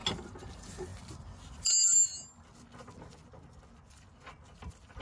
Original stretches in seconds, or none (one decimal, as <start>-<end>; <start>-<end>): 0.0-5.0